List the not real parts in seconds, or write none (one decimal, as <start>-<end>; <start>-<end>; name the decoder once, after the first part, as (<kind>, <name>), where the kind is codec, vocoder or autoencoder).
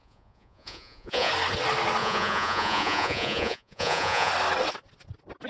0.0-1.3 (vocoder, Vocos); 2.0-4.3